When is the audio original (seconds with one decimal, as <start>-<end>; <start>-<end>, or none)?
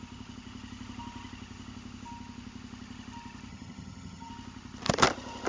0.0-3.5; 4.3-5.5